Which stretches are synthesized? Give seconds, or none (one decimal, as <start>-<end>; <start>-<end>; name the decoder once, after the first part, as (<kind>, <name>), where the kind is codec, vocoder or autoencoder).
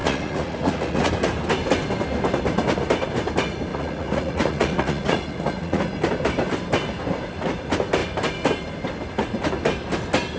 0.0-1.1 (vocoder, Vocos); 3.7-5.8